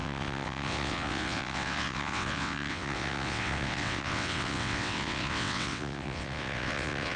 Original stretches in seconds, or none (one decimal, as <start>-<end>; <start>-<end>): none